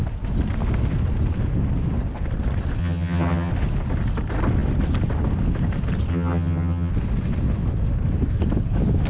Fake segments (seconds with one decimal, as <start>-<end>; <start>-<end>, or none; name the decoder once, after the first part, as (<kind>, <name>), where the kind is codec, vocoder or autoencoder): 2.8-3.5 (vocoder, HiFi-GAN); 6.1-6.9